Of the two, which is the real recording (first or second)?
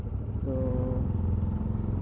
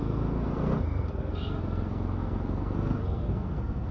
first